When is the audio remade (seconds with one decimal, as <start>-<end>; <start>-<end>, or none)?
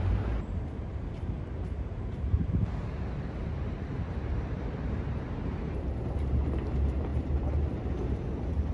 0.0-8.7